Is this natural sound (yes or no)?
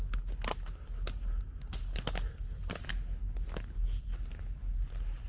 yes